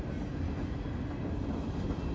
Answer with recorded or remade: recorded